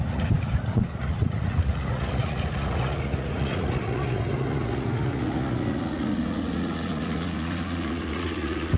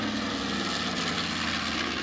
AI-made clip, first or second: first